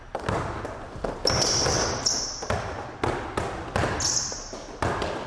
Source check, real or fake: real